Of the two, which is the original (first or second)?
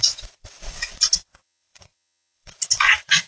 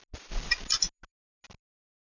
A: second